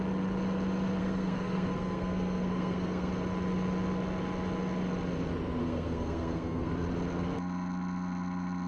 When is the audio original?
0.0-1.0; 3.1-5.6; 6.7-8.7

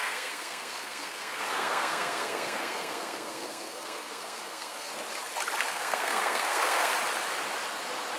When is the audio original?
4.9-5.7; 6.9-8.2

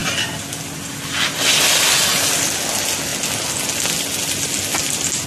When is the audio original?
0.0-5.3

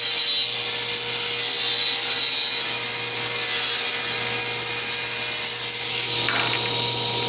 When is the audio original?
0.0-7.3